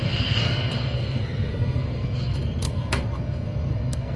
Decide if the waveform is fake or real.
fake